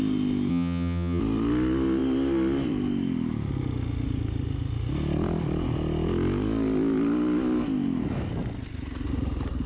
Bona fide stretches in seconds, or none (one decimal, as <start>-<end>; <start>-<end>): 0.0-0.5; 1.2-9.7